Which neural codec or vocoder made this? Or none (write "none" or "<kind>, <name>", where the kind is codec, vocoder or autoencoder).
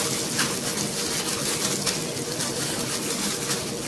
none